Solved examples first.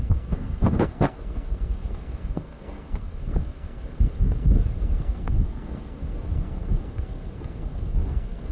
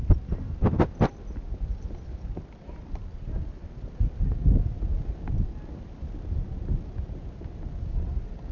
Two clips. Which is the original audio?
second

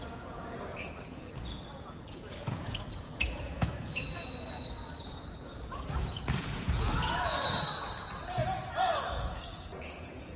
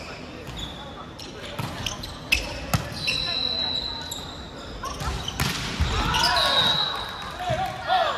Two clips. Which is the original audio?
second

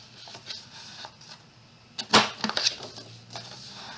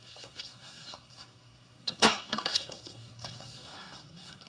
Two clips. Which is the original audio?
first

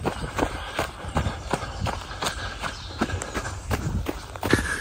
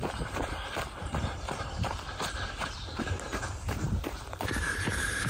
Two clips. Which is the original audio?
first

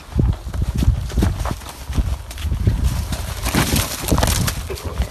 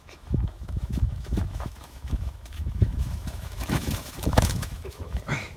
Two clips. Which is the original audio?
first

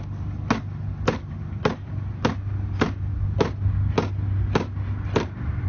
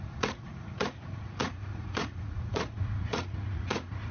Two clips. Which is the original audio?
first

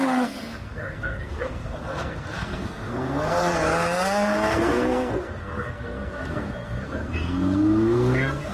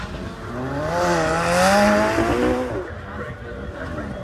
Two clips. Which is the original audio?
second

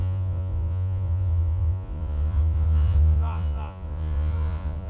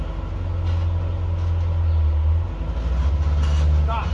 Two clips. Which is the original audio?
second